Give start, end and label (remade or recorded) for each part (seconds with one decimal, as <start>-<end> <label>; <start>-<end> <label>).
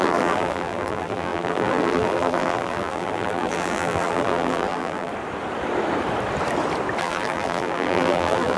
0.0-5.1 remade; 5.1-7.0 recorded; 7.0-8.6 remade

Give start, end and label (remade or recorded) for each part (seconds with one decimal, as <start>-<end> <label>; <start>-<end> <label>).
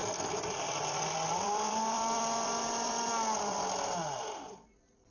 0.0-3.1 remade; 3.1-5.1 recorded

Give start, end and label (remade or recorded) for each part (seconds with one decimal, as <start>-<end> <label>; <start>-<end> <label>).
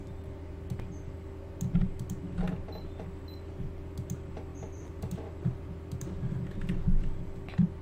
0.0-4.5 recorded; 4.5-5.4 remade; 5.4-7.8 recorded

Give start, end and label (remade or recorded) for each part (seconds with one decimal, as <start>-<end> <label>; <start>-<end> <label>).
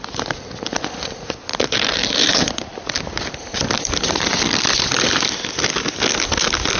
0.0-1.5 recorded; 1.5-5.6 remade; 5.6-6.8 recorded